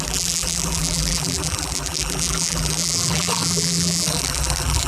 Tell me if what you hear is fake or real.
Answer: fake